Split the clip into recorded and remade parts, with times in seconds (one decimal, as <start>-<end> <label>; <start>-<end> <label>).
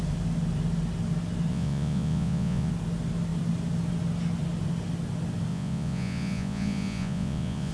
0.0-1.5 recorded; 1.5-2.7 remade; 2.7-5.5 recorded; 5.5-7.7 remade